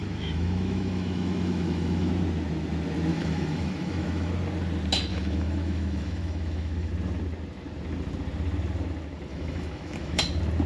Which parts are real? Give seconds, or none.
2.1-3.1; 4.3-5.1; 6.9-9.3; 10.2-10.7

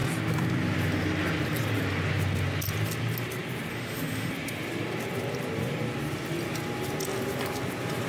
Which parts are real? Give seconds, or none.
0.0-3.7; 4.3-8.1

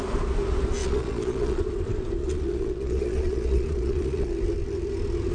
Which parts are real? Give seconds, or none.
0.0-0.8; 1.6-2.2; 4.3-5.3

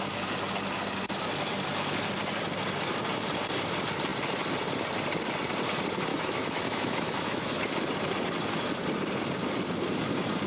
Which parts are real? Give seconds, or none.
0.0-6.1; 7.6-10.5